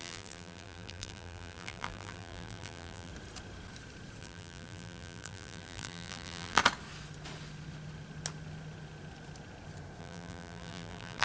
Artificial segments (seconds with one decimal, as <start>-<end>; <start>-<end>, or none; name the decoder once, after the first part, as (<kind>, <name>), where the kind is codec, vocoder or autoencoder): 0.0-3.1 (vocoder, BigVGAN v2); 4.2-6.6; 10.0-11.2